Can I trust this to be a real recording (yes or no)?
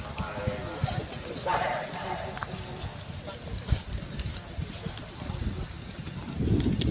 yes